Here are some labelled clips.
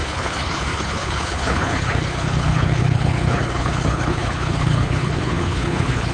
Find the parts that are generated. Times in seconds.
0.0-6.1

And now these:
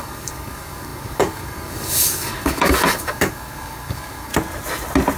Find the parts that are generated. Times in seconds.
0.0-4.3

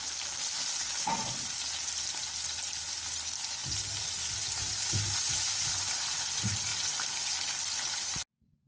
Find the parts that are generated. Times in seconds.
none

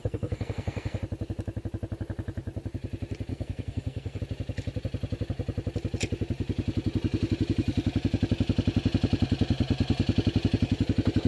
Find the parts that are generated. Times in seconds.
0.0-1.0; 3.3-4.2

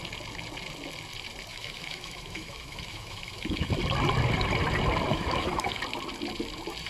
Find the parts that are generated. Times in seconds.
1.5-3.7; 5.1-5.8